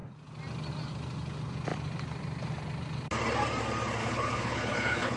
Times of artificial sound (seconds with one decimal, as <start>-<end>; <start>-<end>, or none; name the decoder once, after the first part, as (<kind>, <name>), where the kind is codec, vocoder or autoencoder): 4.0-5.2 (codec, HILCodec)